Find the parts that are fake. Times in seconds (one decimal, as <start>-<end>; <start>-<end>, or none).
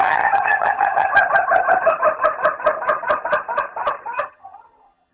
0.0-1.1; 4.2-5.1